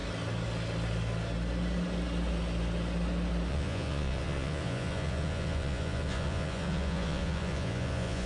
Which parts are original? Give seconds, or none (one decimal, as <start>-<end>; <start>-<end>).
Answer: 0.0-3.5